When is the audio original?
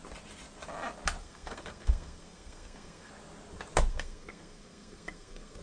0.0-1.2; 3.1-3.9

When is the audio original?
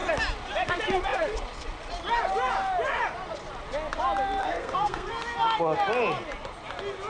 0.0-4.4; 5.1-7.1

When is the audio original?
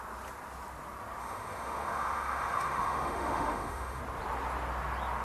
0.0-1.2; 4.0-5.2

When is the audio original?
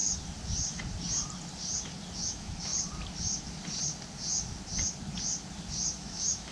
0.0-2.3; 2.7-6.0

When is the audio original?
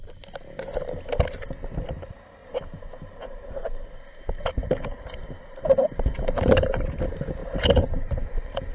0.0-2.4; 7.0-7.4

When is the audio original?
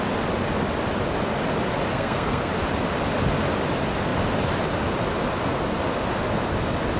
0.0-1.9; 2.5-7.0